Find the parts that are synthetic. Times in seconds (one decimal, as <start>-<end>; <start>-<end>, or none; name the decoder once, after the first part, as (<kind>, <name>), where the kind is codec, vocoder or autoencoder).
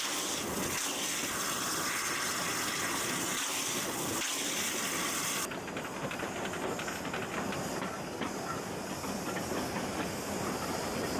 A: none